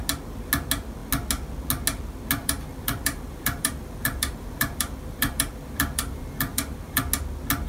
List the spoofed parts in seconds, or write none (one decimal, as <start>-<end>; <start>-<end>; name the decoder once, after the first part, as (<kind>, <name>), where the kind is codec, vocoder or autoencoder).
2.4-7.0 (vocoder, BigVGAN v2)